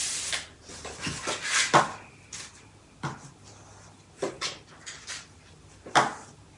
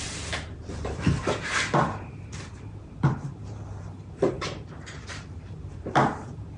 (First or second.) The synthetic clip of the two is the second